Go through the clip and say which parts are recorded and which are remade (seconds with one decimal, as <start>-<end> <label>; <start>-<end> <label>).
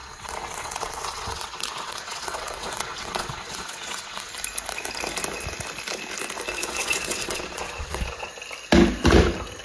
0.0-4.3 remade; 4.3-6.6 recorded; 6.6-8.3 remade; 8.3-9.6 recorded